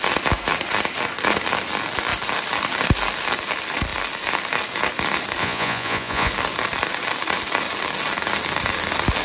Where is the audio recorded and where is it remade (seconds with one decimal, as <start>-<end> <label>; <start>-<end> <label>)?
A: 0.0-5.4 recorded; 5.4-6.3 remade; 6.3-9.2 recorded